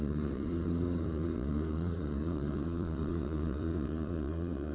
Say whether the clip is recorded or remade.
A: remade